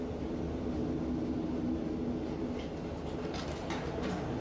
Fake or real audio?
real